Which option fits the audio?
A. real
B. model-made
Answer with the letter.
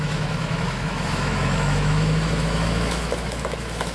B